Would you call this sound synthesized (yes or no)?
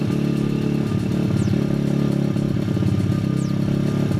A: no